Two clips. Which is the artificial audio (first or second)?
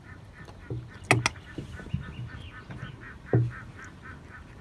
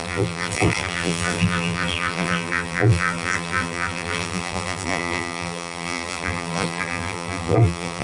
second